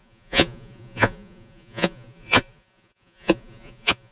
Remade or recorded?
remade